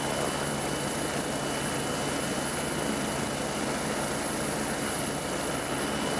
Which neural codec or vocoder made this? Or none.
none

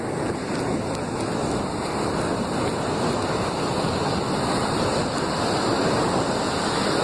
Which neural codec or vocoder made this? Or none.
none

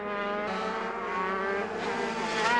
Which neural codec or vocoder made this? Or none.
none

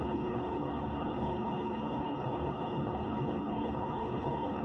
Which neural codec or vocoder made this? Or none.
codec, HILCodec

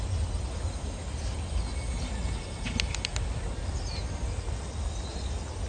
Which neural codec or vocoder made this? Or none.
none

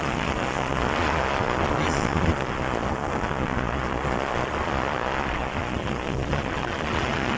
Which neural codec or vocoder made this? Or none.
vocoder, Vocos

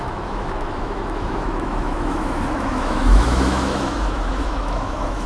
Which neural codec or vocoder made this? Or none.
autoencoder, DAC-VAE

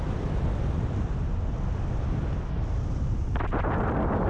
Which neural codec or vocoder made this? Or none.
none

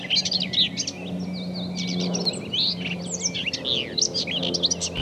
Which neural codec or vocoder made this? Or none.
none